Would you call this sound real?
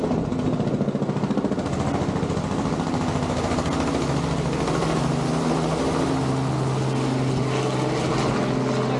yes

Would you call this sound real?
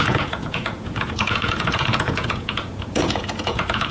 no